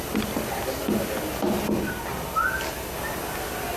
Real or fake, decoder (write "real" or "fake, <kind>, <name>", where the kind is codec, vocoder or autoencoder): real